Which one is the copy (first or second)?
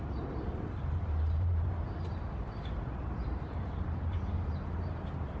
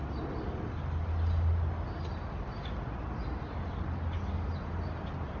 first